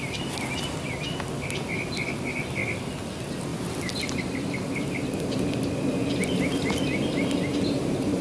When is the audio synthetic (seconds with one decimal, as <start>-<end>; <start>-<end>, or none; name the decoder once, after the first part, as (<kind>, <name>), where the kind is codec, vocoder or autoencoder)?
none